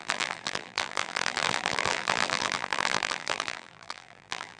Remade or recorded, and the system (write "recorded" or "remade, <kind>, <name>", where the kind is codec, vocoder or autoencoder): remade, vocoder, BigVGAN v2